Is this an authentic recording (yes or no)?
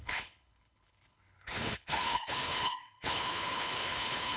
no